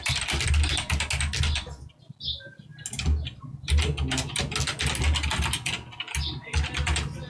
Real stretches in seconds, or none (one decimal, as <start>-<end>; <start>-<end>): 0.0-7.3